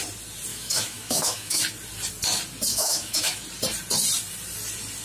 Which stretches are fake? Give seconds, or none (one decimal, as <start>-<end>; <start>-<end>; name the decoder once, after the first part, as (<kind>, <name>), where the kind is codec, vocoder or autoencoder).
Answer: 0.5-1.6 (autoencoder, DAC-VAE); 2.7-3.4